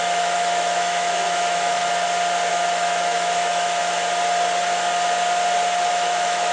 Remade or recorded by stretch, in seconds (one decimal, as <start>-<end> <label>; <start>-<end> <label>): 0.0-1.8 remade; 1.8-2.5 recorded; 2.5-3.8 remade; 3.8-5.9 recorded; 5.9-6.5 remade